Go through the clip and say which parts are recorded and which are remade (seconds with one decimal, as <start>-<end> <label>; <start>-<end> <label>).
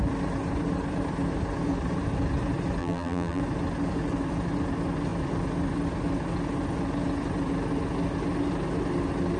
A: 0.0-2.8 recorded; 2.8-3.4 remade; 3.4-9.4 recorded